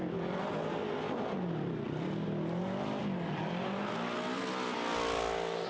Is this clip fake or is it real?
real